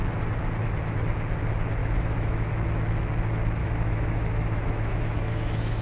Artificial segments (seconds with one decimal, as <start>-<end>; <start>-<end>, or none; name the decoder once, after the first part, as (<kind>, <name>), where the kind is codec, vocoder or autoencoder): 1.8-2.5 (autoencoder, DAC-VAE); 3.6-5.8